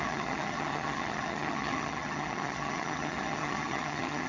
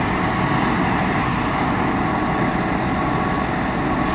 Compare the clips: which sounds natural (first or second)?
second